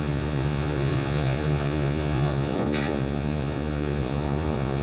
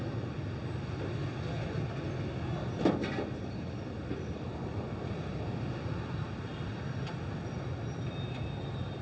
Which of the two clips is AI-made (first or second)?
first